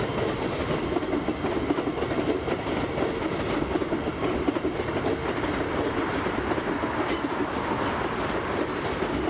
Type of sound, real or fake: real